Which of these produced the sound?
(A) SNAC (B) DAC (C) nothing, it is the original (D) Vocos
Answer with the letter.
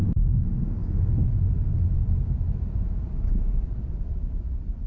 C